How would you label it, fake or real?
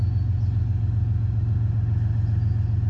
real